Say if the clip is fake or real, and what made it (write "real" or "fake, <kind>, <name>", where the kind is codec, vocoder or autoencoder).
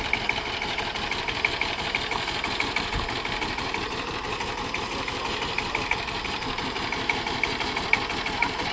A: real